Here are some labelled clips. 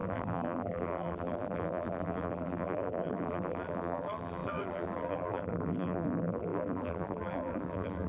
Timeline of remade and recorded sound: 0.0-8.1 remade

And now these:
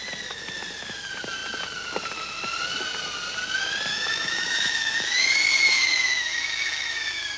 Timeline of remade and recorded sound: 0.0-3.9 recorded; 3.9-7.4 remade

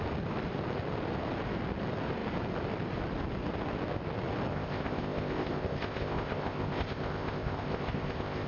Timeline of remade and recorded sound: 0.0-4.5 recorded; 4.5-8.5 remade

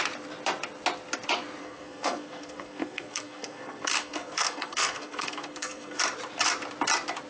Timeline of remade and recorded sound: 0.0-1.6 recorded; 1.6-6.0 remade; 6.0-7.3 recorded

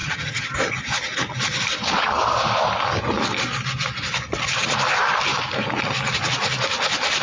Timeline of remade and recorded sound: 0.0-0.5 remade; 0.5-7.2 recorded